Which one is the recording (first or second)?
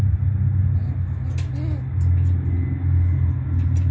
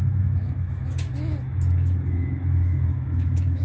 first